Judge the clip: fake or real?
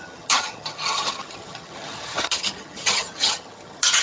fake